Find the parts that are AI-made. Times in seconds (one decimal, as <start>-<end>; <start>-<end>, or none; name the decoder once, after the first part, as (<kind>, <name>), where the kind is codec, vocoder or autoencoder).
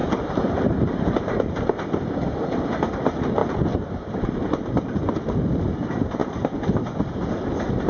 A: 0.0-1.5 (vocoder, BigVGAN v2); 3.4-5.1; 6.2-6.9